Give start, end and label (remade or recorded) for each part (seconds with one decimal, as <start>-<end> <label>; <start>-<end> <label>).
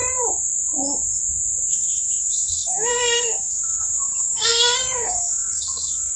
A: 0.0-1.7 recorded; 1.7-6.2 remade